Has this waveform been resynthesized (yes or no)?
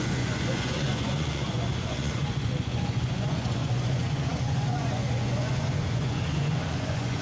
yes